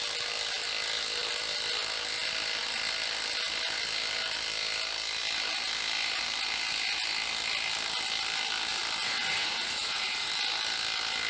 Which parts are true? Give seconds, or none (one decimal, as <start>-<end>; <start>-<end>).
0.0-9.0; 10.3-11.3